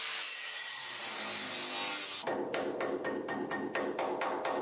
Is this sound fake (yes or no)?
no